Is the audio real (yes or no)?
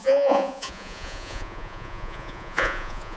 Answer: no